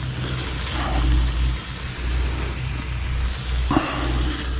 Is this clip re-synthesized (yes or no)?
no